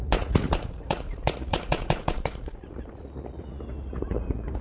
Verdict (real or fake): fake